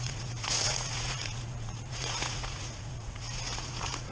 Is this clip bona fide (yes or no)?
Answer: no